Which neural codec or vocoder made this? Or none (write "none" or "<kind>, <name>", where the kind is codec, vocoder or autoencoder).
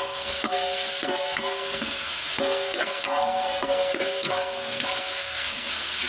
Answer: codec, SNAC